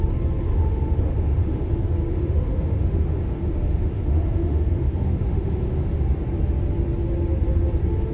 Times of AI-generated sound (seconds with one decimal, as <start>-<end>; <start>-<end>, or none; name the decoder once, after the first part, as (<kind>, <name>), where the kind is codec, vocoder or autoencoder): 0.5-1.7 (autoencoder, DAC-VAE); 2.1-6.0